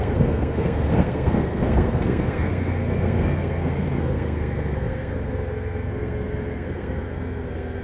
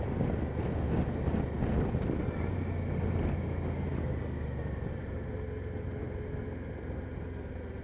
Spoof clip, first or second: first